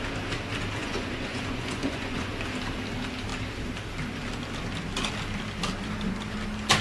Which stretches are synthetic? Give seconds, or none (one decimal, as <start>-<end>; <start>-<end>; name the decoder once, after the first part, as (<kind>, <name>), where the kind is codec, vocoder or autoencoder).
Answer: 0.8-2.3 (vocoder, Vocos)